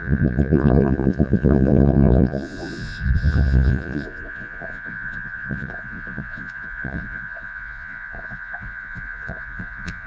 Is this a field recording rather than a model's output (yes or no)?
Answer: no